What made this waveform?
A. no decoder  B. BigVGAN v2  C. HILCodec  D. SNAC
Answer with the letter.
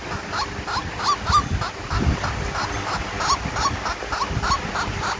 A